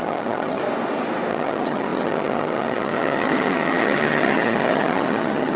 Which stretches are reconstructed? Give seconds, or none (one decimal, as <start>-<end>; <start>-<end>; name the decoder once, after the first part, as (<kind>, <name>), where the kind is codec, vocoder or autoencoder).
0.0-0.6 (vocoder, HiFi-GAN); 1.3-5.6